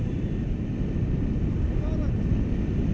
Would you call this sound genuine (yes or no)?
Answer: yes